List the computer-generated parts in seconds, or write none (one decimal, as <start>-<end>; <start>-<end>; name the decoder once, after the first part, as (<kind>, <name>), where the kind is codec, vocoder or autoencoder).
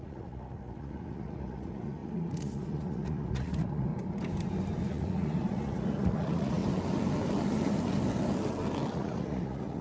0.0-3.9 (vocoder, Vocos); 4.9-6.6; 8.9-9.8